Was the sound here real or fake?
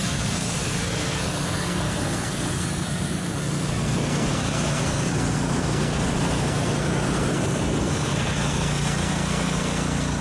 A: fake